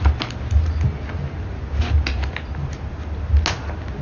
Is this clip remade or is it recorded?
recorded